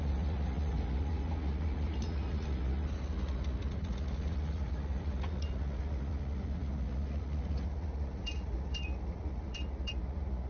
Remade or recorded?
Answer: remade